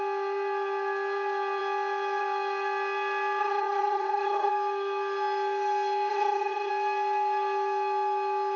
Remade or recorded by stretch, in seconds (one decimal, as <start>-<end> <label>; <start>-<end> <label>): 0.0-3.4 recorded; 3.4-4.5 remade; 4.5-6.1 recorded; 6.1-6.7 remade; 6.7-8.6 recorded